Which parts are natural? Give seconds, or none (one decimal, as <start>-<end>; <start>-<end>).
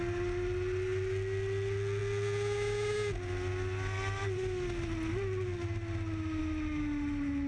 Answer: 0.0-7.5